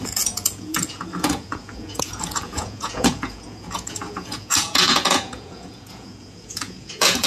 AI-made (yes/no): yes